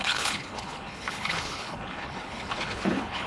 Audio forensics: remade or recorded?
remade